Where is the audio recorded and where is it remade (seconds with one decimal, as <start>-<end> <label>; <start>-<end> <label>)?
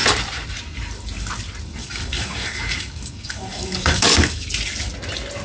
0.0-1.8 recorded; 1.8-4.5 remade; 4.5-5.4 recorded